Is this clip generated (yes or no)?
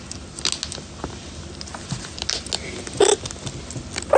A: no